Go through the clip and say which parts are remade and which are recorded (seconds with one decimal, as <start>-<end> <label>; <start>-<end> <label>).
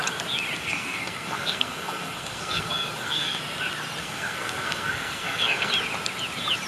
0.0-0.6 recorded; 0.6-3.4 remade; 3.4-4.0 recorded; 4.0-5.7 remade; 5.7-6.7 recorded